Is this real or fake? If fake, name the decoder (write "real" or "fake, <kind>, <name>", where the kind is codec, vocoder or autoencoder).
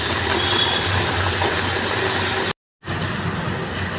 real